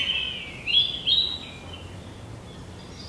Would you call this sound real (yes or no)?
yes